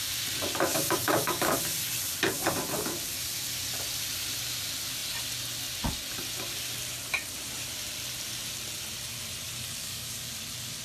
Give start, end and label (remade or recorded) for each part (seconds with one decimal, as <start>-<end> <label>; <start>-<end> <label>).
0.0-0.7 recorded; 0.7-1.6 remade; 1.6-9.8 recorded; 9.8-10.3 remade; 10.3-10.8 recorded